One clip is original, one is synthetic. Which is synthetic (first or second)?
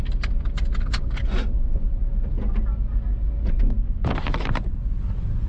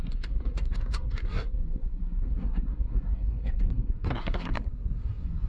second